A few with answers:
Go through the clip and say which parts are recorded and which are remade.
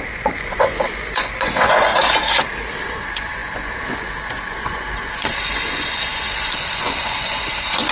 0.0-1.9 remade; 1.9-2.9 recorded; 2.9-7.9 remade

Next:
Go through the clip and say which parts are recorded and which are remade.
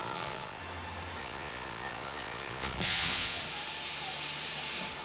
0.0-0.6 remade; 0.6-1.2 recorded; 1.2-3.4 remade; 3.4-5.0 recorded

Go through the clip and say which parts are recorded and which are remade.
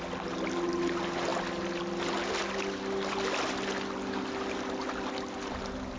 0.0-6.0 recorded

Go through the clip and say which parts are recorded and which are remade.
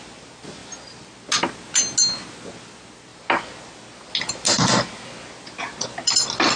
0.0-6.6 recorded